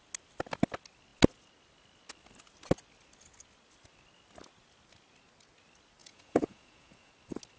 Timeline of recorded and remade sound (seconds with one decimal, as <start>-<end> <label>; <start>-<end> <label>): 0.0-6.0 recorded; 6.0-7.1 remade; 7.1-7.6 recorded